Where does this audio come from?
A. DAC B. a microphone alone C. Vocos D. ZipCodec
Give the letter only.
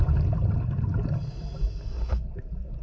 B